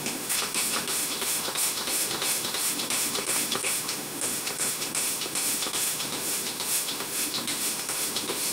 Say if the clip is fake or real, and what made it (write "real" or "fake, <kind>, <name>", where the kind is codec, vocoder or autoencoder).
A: fake, autoencoder, DAC-VAE